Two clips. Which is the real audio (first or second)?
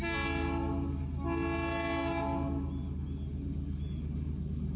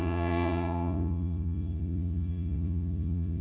first